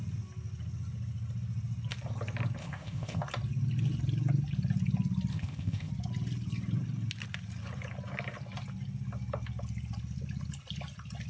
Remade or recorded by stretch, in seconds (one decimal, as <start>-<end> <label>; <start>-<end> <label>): 0.0-2.6 recorded; 2.6-3.2 remade; 3.2-5.3 recorded; 5.3-5.9 remade; 5.9-11.3 recorded